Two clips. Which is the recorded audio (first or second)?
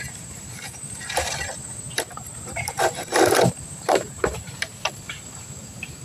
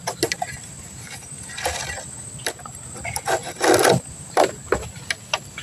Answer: second